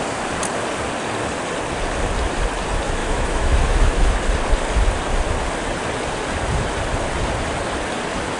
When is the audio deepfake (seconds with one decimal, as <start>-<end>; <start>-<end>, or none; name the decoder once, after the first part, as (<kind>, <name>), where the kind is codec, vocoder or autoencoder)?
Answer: 3.0-4.1 (autoencoder, DAC-VAE)